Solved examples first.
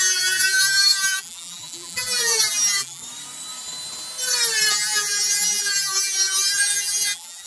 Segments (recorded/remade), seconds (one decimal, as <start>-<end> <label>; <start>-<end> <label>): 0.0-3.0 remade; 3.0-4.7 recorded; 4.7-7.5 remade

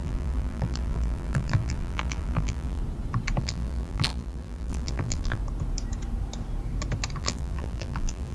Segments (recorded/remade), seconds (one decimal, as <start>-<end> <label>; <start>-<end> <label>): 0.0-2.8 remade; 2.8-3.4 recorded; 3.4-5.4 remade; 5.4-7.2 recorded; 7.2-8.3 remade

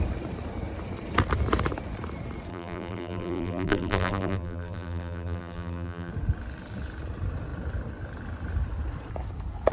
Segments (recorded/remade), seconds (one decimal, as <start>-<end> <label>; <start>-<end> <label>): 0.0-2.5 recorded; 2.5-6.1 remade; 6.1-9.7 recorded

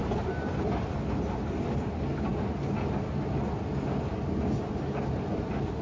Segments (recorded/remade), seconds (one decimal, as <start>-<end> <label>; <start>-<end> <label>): 0.0-5.8 recorded

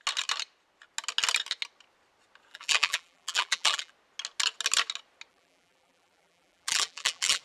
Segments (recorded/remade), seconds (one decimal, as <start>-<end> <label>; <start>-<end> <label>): 0.0-2.5 recorded; 2.5-3.9 remade; 3.9-5.3 recorded; 5.3-7.4 remade

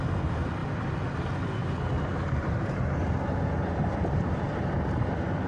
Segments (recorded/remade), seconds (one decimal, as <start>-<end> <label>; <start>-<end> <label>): 0.0-3.9 recorded; 3.9-4.6 remade; 4.6-5.5 recorded

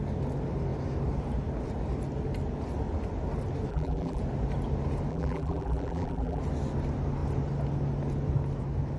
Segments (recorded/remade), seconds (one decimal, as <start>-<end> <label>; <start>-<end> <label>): 0.0-3.7 recorded; 3.7-4.2 remade; 4.2-5.1 recorded; 5.1-6.4 remade; 6.4-9.0 recorded

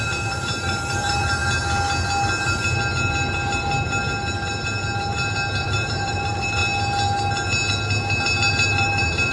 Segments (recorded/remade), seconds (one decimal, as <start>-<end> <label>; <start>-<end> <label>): 0.0-1.4 remade; 1.4-5.6 recorded; 5.6-6.6 remade; 6.6-8.5 recorded; 8.5-9.3 remade